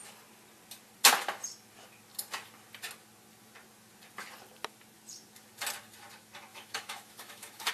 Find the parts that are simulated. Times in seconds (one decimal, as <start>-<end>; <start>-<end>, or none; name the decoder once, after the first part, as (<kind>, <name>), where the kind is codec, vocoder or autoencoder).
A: 6.5-7.7 (autoencoder, DAC-VAE)